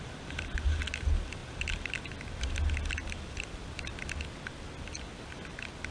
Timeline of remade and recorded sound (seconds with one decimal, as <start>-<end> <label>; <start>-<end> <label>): 0.0-5.9 recorded